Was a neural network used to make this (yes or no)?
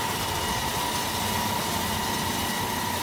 no